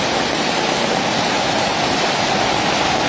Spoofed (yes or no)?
no